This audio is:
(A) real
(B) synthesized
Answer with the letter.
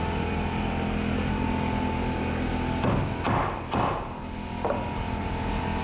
A